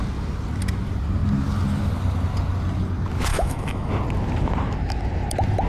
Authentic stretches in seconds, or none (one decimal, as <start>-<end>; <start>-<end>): 0.0-3.3; 3.9-5.7